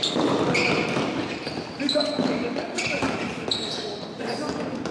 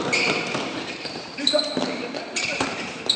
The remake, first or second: second